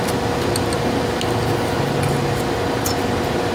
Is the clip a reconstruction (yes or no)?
no